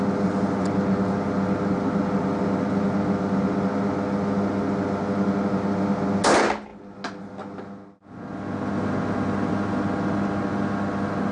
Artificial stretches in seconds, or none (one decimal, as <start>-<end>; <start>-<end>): none

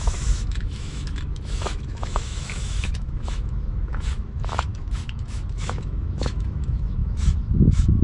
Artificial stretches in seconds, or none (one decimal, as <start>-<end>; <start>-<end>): 0.0-8.0

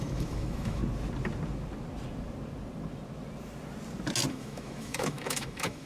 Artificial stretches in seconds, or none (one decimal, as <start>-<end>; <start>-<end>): 0.0-0.8; 4.3-5.9

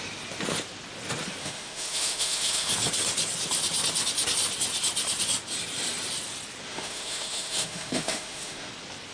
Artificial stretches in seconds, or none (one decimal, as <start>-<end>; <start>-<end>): 1.4-2.7; 6.7-8.7

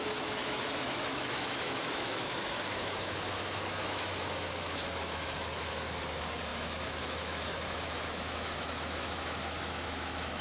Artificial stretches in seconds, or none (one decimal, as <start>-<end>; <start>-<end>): 0.0-10.4

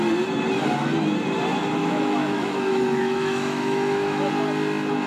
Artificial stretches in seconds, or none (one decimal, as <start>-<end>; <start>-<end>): 1.8-4.3

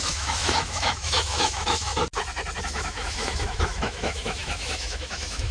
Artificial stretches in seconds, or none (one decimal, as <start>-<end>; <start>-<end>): 0.0-1.9; 2.6-5.5

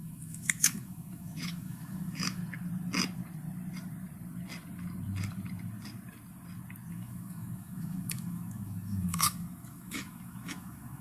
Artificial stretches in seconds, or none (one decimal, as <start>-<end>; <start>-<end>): 0.0-2.4; 6.9-11.0